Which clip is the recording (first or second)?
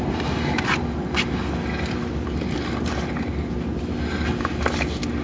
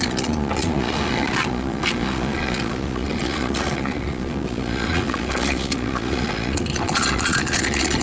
first